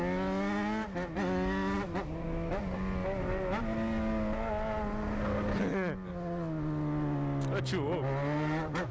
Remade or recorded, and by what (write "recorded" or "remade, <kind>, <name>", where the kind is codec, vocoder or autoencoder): recorded